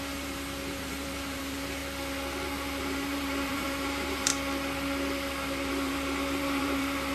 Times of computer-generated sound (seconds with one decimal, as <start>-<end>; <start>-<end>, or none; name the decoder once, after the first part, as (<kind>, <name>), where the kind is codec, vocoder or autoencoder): 0.0-1.8 (vocoder, BigVGAN v2); 2.8-4.3; 5.7-7.1